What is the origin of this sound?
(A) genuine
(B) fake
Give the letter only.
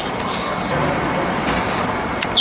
A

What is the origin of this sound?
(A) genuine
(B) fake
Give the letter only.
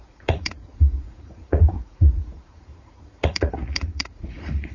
B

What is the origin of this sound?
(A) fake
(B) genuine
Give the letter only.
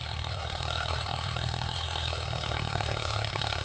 A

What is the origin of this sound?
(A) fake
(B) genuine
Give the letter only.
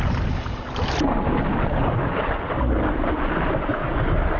B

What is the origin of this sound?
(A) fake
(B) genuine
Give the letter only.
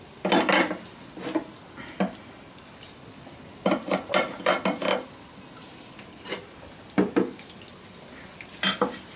B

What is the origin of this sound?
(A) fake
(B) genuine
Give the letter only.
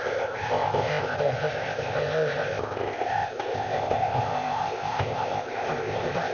A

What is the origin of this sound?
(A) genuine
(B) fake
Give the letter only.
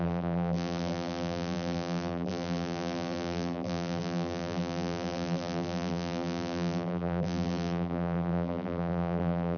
B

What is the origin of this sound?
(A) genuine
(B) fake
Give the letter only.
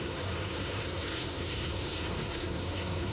B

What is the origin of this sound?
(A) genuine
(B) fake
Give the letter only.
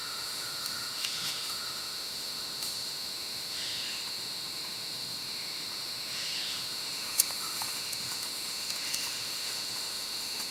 B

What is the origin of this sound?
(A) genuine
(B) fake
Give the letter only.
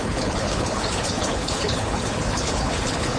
B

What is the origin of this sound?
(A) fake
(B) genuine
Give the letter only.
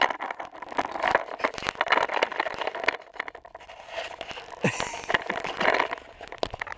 B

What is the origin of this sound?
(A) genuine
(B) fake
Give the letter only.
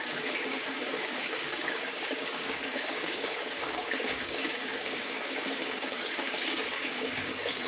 B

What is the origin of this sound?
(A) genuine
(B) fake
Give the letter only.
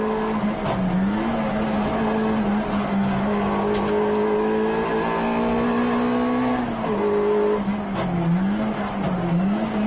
A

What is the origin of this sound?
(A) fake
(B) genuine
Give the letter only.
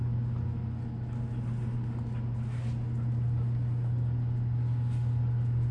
B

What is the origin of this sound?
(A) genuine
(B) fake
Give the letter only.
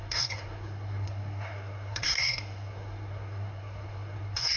B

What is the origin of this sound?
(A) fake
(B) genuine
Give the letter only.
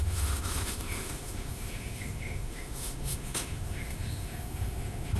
A